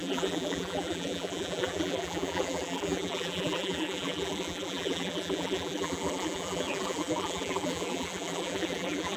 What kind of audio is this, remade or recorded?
remade